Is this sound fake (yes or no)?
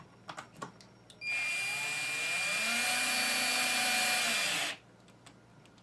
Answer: no